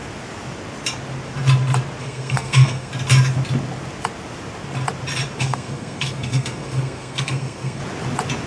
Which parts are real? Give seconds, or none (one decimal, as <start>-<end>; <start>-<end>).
0.0-2.0; 2.9-5.4; 7.8-8.5